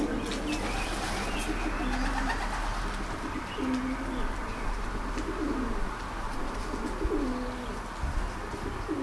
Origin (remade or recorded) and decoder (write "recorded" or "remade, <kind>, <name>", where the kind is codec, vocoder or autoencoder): recorded